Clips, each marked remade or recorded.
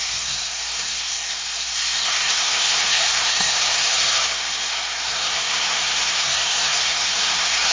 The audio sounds remade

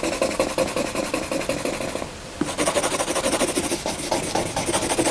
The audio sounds recorded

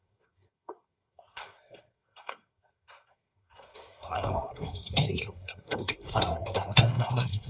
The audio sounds remade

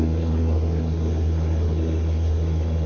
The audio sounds remade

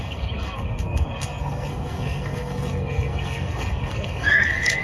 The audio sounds remade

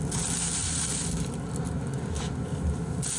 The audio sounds recorded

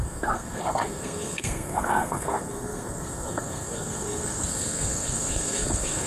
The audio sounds remade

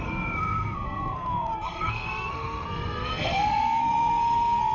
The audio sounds remade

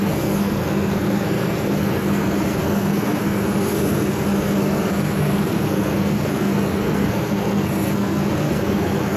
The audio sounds remade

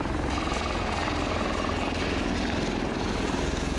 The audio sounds recorded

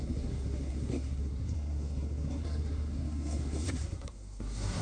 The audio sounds remade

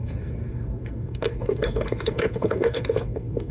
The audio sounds remade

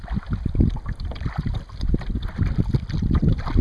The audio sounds recorded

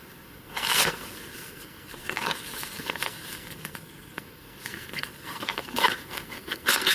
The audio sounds remade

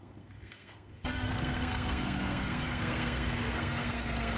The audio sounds remade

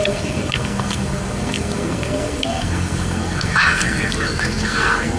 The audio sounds remade